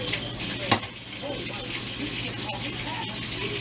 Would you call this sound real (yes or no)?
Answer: yes